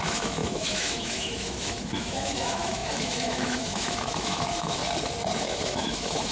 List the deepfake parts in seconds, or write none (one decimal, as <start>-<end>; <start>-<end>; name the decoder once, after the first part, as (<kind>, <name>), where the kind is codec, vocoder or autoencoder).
0.0-4.8 (autoencoder, DAC-VAE); 5.4-6.3